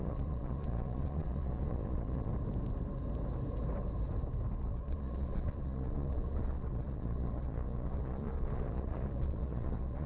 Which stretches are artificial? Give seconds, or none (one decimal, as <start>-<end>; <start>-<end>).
0.0-2.3; 4.6-10.1